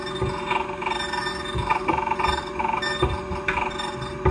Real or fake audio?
real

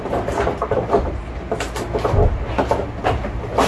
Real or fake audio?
real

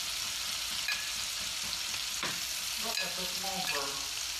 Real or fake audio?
real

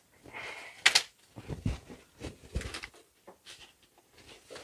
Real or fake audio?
real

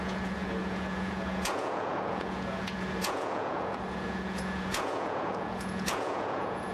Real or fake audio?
fake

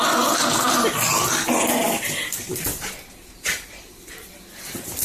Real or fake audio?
real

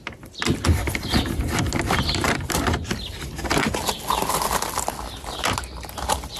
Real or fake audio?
real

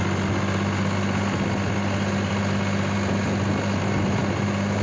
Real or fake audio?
real